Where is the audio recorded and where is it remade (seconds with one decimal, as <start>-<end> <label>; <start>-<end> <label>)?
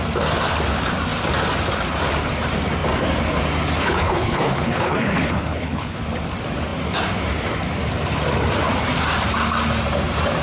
0.0-3.8 recorded; 3.8-6.0 remade; 6.0-10.4 recorded